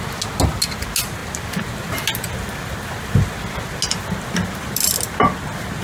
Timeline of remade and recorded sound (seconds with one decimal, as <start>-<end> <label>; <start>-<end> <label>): 0.0-5.8 recorded